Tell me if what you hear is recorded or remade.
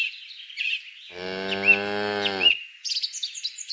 recorded